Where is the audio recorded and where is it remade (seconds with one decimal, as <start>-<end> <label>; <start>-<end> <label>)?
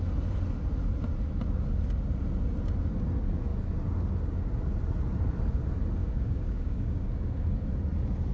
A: 0.0-6.0 recorded; 6.0-7.7 remade; 7.7-8.3 recorded